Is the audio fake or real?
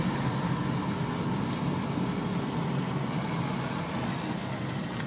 real